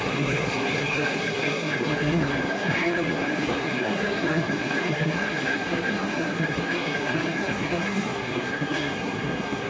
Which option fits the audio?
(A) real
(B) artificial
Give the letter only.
B